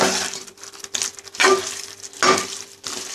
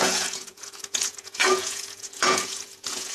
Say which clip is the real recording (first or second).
first